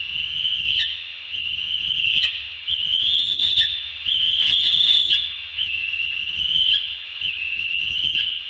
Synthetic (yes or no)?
yes